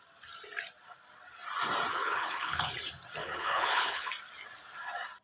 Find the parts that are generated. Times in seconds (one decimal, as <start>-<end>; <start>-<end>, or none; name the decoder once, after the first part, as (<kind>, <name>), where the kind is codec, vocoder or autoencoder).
1.9-2.7 (codec, HILCodec); 3.2-4.1